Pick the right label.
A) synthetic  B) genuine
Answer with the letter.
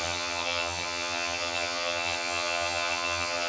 A